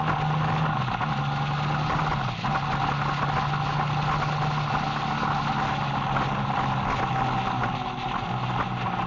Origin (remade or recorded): recorded